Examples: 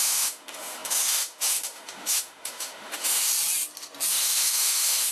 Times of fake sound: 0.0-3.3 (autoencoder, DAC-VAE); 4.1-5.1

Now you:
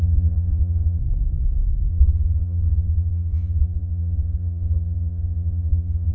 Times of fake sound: 0.0-1.0 (vocoder, Vocos); 1.9-6.1

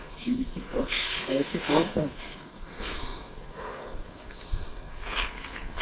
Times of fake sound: 0.0-5.8 (codec, SNAC)

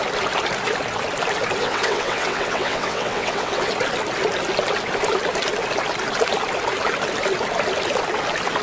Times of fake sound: 1.6-3.7 (vocoder, WaveNeXt)

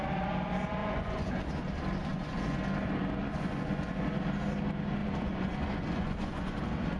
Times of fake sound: 0.8-1.3 (vocoder, Vocos); 2.1-2.6; 3.2-4.0; 5.0-6.6

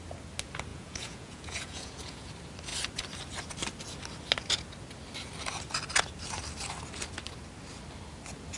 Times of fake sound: 0.7-2.3 (vocoder, Vocos)